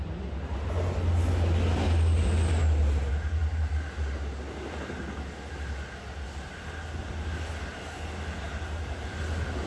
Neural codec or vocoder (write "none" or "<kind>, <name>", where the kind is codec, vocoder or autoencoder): none